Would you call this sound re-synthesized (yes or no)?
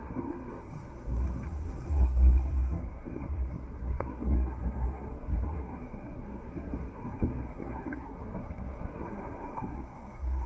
yes